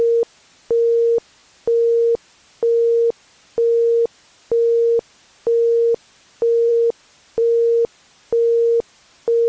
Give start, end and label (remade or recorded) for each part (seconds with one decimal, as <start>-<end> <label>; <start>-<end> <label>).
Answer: 0.0-9.5 recorded